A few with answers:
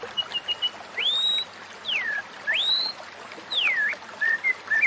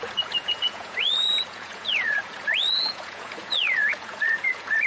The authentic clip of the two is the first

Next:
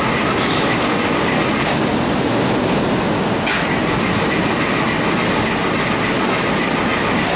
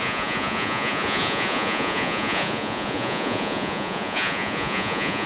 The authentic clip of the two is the first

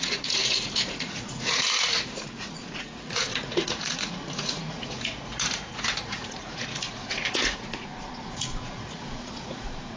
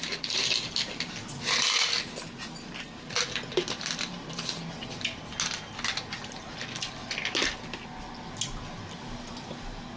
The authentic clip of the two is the second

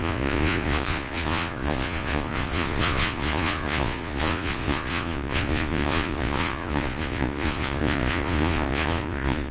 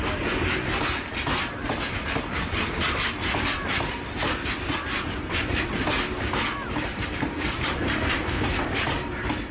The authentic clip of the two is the second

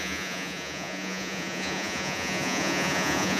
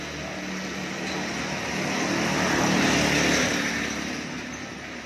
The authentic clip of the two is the second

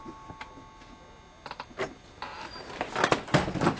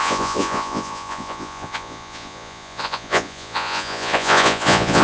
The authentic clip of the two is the first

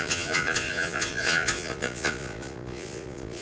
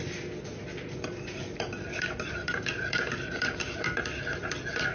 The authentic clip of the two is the second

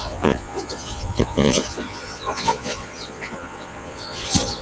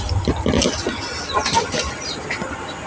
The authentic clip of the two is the second